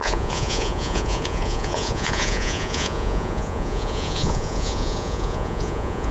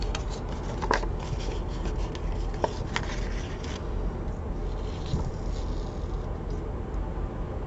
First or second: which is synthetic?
first